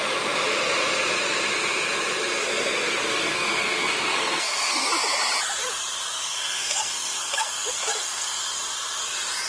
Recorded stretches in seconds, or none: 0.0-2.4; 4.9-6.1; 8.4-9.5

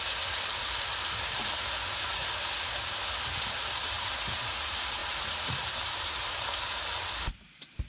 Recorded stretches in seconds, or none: 0.0-1.5; 4.6-5.0

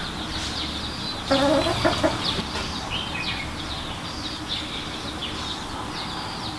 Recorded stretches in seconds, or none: 0.0-6.6

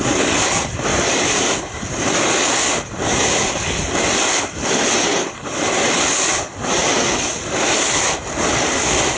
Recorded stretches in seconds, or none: 0.0-0.9; 3.4-5.1; 6.0-6.8; 7.3-9.2

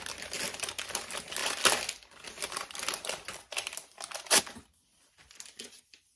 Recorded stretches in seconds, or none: 0.0-6.2

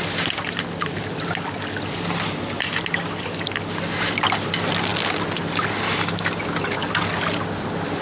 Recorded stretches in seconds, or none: 0.0-8.0

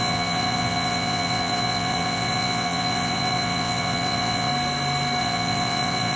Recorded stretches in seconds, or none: 4.5-5.2